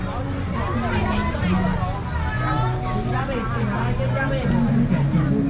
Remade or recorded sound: recorded